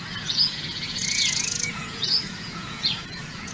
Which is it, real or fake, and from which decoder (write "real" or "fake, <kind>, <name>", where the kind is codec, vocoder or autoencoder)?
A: fake, vocoder, Vocos